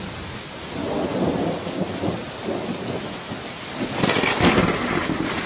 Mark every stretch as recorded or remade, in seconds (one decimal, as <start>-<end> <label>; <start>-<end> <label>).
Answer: 0.0-5.5 recorded